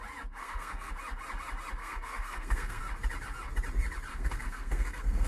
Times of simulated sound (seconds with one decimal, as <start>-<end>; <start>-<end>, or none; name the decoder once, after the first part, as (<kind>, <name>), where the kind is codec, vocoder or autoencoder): 0.4-0.9 (codec, SNAC); 1.8-2.8; 4.1-5.3